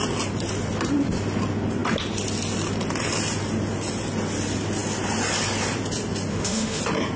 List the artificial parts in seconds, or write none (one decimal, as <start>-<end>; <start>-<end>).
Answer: 6.3-6.8